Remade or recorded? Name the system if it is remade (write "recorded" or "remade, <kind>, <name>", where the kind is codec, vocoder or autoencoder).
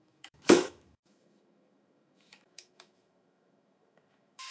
remade, autoencoder, DAC-VAE